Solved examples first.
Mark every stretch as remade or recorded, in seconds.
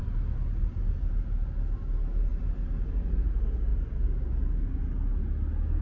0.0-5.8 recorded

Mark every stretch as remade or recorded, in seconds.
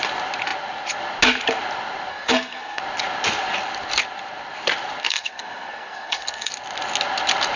0.0-2.1 recorded; 2.1-2.8 remade; 2.8-5.0 recorded; 5.0-6.5 remade; 6.5-7.6 recorded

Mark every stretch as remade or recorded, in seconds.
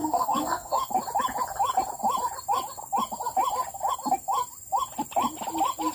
0.0-0.9 remade; 0.9-5.9 recorded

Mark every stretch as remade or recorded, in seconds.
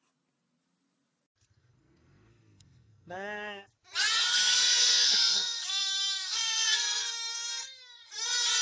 0.0-1.6 recorded; 1.6-3.7 remade; 3.7-4.3 recorded; 4.3-8.1 remade; 8.1-8.6 recorded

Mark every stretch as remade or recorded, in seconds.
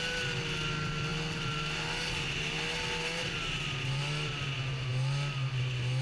0.0-6.0 recorded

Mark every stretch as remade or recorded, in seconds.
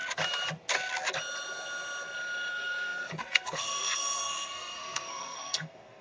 0.0-2.5 recorded; 2.5-6.0 remade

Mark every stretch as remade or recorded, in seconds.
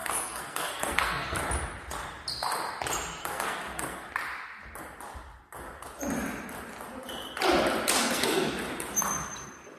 0.0-1.4 remade; 1.4-3.2 recorded; 3.2-4.1 remade; 4.1-8.0 recorded; 8.0-8.5 remade; 8.5-9.8 recorded